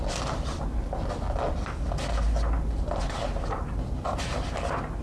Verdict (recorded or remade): recorded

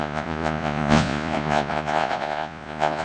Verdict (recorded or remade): remade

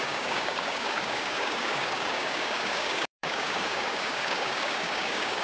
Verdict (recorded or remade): remade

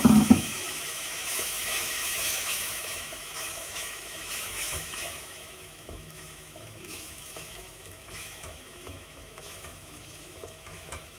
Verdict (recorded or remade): remade